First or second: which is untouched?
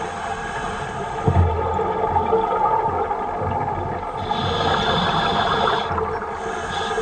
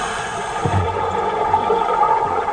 first